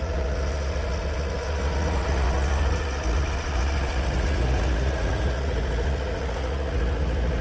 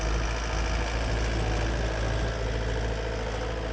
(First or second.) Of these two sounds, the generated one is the first